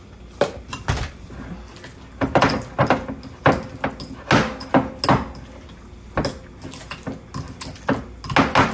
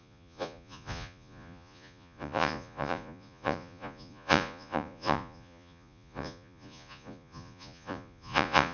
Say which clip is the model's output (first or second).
second